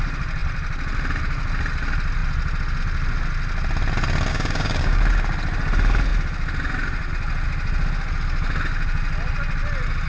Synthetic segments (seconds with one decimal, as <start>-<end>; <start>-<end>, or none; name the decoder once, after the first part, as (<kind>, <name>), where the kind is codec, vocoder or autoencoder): 4.3-5.0 (codec, DAC)